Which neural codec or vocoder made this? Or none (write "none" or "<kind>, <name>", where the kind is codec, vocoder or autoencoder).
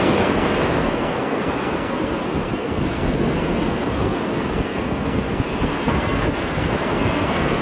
codec, SNAC